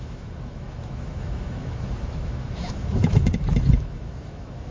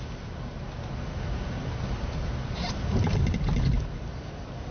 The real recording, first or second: second